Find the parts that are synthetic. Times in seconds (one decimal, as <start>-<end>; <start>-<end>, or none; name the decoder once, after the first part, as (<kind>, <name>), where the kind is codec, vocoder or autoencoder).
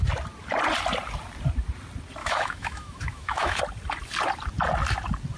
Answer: 2.2-3.6 (autoencoder, DAC-VAE)